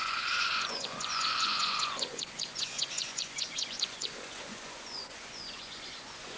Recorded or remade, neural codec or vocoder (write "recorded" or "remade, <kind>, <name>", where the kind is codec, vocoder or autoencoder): remade, vocoder, Vocos